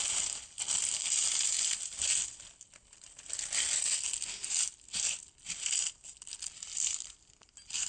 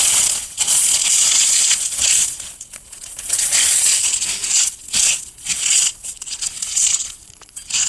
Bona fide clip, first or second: first